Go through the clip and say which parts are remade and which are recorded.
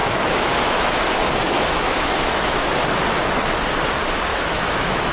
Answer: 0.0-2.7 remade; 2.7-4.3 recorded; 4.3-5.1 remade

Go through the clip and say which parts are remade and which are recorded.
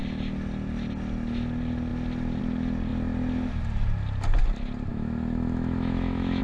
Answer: 0.0-4.9 recorded; 4.9-6.4 remade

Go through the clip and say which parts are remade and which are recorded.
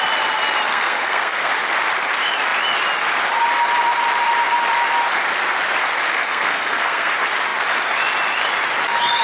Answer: 0.0-0.7 recorded; 0.7-1.5 remade; 1.5-6.1 recorded; 6.1-7.1 remade; 7.1-9.2 recorded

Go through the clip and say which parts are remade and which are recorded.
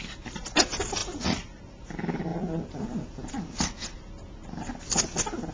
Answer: 0.0-1.0 recorded; 1.0-1.6 remade; 1.6-5.5 recorded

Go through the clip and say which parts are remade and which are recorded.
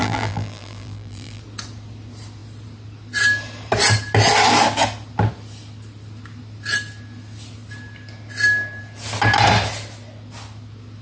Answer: 0.0-1.4 remade; 1.4-11.0 recorded